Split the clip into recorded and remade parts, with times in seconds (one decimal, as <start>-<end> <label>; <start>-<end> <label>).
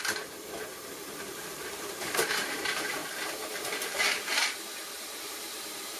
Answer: 0.0-3.0 remade; 3.0-5.2 recorded; 5.2-6.0 remade